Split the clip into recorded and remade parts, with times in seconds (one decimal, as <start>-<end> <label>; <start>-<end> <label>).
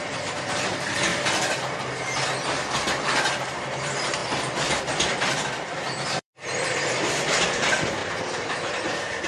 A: 0.0-1.1 remade; 1.1-3.8 recorded; 3.8-9.3 remade